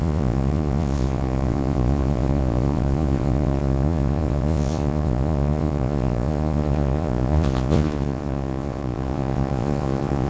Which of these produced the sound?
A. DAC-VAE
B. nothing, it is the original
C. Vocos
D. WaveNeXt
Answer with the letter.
C